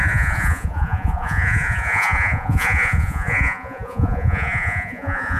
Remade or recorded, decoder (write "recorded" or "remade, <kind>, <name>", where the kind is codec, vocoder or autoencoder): remade, vocoder, Vocos